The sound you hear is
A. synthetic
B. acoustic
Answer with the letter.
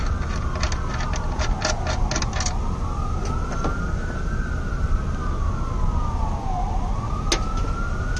B